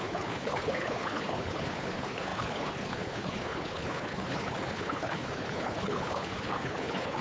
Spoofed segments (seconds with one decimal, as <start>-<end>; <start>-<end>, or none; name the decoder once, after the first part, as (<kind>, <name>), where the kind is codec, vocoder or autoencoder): 0.0-7.2 (codec, HILCodec)